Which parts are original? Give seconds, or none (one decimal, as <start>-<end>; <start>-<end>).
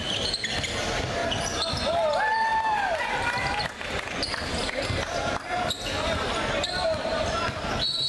0.0-8.1